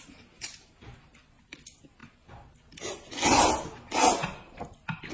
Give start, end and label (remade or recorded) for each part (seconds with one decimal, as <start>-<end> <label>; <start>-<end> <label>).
0.0-5.1 recorded